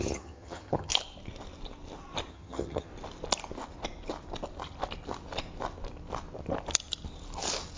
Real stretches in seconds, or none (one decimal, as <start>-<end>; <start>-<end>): 0.9-2.3; 2.9-7.8